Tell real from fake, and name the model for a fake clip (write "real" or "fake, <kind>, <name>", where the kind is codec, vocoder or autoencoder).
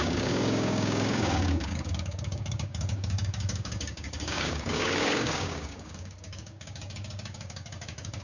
fake, codec, DAC